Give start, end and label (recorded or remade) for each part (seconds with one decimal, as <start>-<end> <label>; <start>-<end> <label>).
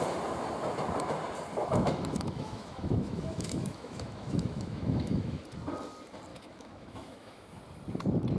0.0-1.6 recorded; 1.6-5.4 remade; 5.4-6.3 recorded; 6.3-7.6 remade; 7.6-8.4 recorded